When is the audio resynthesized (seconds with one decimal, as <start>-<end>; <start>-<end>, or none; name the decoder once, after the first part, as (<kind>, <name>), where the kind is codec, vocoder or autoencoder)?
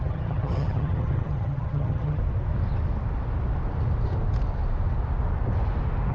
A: 0.0-2.2 (vocoder, HiFi-GAN)